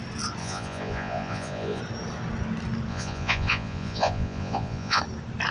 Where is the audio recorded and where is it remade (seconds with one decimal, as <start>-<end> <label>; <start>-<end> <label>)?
0.0-0.4 recorded; 0.4-1.8 remade; 1.8-2.9 recorded; 2.9-5.0 remade; 5.0-5.5 recorded